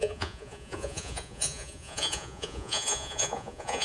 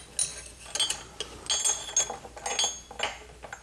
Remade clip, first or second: first